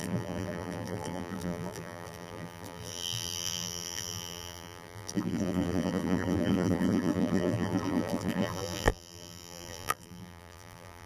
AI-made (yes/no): yes